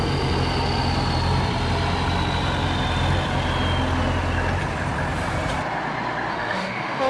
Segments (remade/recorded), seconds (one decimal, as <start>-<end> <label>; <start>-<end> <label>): 0.0-6.3 recorded; 6.3-7.1 remade